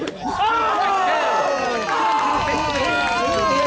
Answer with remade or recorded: recorded